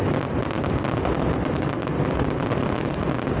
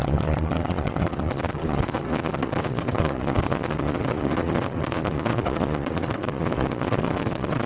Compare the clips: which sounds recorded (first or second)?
first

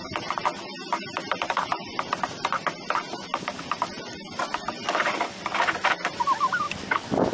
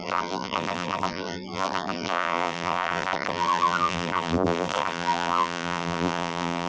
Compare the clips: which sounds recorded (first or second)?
first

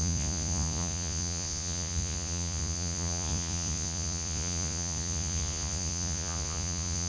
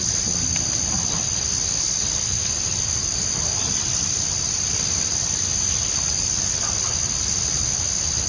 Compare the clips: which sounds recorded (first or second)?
second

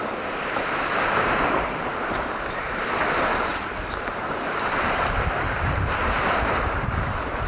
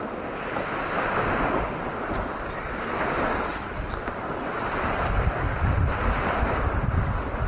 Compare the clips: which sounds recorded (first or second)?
second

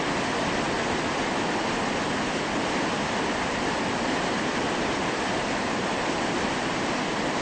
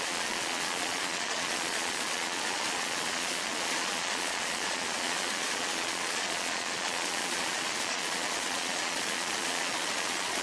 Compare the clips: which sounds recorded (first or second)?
first